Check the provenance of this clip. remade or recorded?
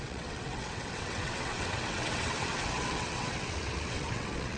remade